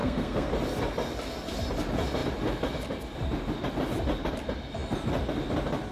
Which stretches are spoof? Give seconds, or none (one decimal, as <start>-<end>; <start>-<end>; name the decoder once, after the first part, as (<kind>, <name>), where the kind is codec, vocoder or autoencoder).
0.0-0.5 (codec, SNAC)